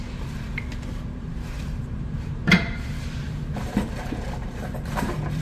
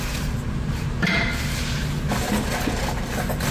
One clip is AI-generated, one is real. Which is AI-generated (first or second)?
first